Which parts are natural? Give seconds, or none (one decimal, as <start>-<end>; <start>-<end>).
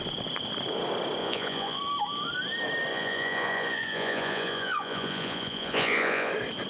0.0-1.2; 1.8-2.9; 6.3-6.7